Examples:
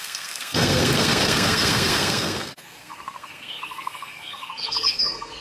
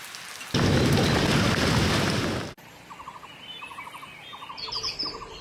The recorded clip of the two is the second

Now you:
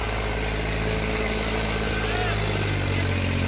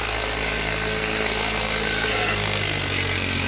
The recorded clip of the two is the first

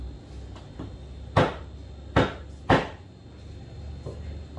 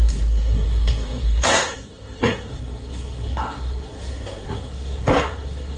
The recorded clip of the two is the first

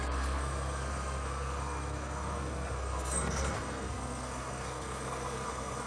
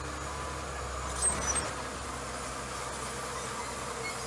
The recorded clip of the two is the second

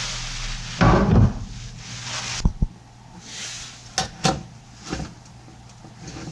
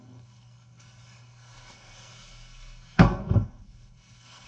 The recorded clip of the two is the first